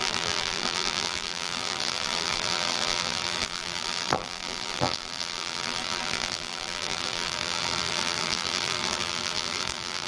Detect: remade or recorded remade